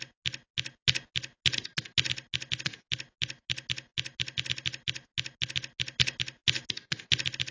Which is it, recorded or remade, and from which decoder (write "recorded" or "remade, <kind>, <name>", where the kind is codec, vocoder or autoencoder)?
recorded